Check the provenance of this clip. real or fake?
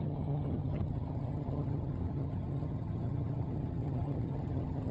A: fake